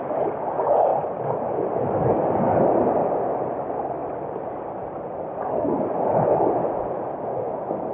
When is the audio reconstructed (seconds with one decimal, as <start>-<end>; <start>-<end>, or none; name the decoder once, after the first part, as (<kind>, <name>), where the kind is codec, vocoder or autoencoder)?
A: none